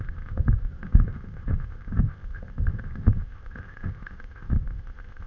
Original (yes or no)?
no